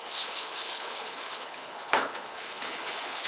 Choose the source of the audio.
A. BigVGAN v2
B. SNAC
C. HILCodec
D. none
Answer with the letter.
C